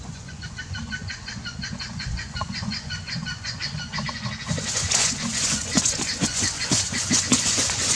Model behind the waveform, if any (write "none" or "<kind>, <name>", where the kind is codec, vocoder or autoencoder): vocoder, Vocos